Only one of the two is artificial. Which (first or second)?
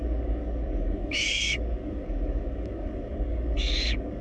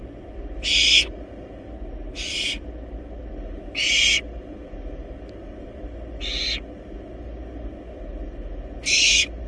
first